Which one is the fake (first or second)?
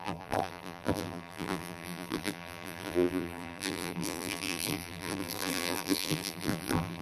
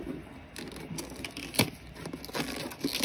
first